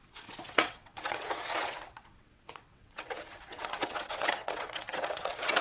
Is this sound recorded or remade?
remade